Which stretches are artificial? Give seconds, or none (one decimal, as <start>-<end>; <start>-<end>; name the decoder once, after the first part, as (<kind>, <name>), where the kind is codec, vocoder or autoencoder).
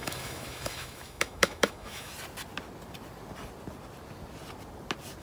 0.0-2.1 (autoencoder, DAC-VAE)